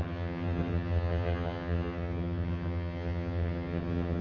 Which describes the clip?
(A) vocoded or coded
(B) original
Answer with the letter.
A